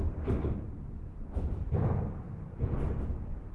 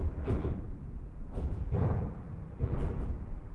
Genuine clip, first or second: first